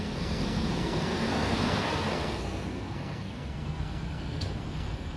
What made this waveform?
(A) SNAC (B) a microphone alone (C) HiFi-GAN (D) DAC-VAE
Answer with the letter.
A